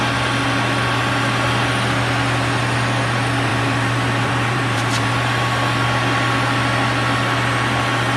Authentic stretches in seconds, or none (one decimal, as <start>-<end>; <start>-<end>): 0.0-3.5; 5.1-8.2